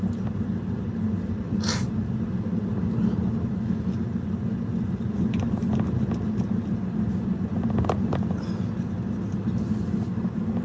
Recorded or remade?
recorded